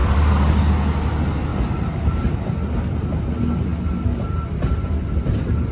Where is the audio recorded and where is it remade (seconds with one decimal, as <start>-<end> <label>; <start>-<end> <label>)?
0.0-0.6 remade; 0.6-1.5 recorded; 1.5-2.0 remade; 2.0-5.7 recorded